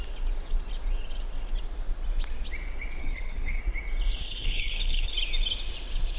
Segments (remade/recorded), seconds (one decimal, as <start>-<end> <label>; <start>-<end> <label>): 0.0-3.0 recorded; 3.0-3.6 remade; 3.6-4.2 recorded; 4.2-5.1 remade; 5.1-6.2 recorded

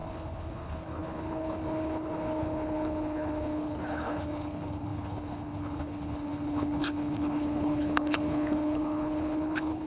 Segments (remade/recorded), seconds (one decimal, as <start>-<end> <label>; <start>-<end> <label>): 0.0-9.9 remade

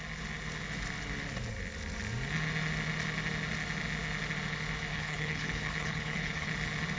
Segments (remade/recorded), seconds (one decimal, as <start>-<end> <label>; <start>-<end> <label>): 0.0-4.9 recorded; 4.9-6.5 remade; 6.5-7.0 recorded

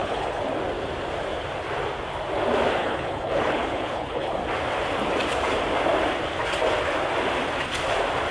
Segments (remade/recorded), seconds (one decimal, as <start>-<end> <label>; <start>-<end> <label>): 0.0-0.5 remade; 0.5-2.8 recorded; 2.8-4.4 remade; 4.4-8.3 recorded

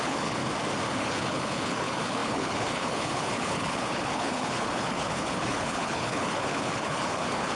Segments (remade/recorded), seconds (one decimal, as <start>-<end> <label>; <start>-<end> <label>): 0.0-0.4 remade; 0.4-0.9 recorded; 0.9-7.6 remade